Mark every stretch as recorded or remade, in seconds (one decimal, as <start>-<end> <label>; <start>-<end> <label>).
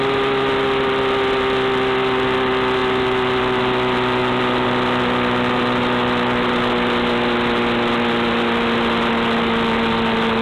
0.0-10.4 recorded